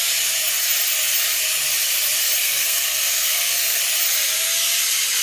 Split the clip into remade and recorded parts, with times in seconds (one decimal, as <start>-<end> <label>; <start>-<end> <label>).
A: 0.0-2.4 recorded; 2.4-3.8 remade; 3.8-5.2 recorded